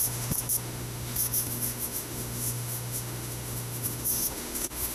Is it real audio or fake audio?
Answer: fake